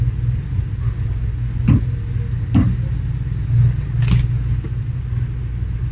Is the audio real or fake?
real